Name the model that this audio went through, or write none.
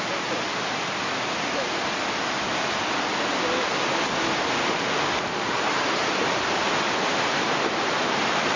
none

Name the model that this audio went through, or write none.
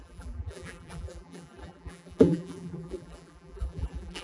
vocoder, BigVGAN v2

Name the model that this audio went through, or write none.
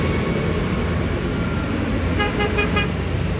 none